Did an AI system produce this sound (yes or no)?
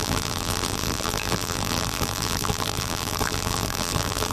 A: yes